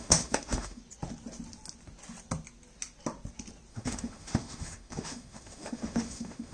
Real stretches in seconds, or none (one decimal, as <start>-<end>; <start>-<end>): 0.8-3.7